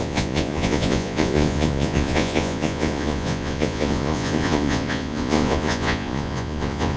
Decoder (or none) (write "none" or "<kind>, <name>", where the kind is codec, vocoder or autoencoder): vocoder, Vocos